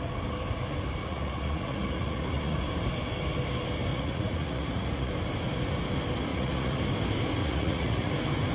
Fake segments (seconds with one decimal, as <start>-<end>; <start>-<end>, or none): 1.0-2.6; 3.9-5.1; 6.3-6.8; 7.4-8.1